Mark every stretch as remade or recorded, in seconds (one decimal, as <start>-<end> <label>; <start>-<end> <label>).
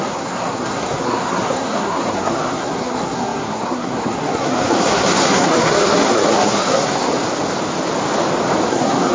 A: 0.0-7.1 remade; 7.1-8.7 recorded; 8.7-9.1 remade